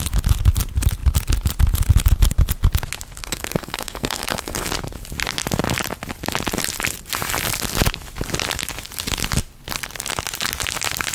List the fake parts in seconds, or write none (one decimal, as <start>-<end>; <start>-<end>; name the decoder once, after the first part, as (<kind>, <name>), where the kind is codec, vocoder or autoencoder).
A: 3.2-4.7 (codec, SNAC)